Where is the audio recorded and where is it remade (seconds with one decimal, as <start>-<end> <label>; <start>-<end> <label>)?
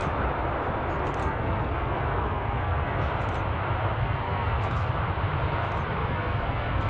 0.0-1.2 recorded; 1.2-3.1 remade; 3.1-4.0 recorded; 4.0-4.9 remade; 4.9-6.0 recorded; 6.0-6.9 remade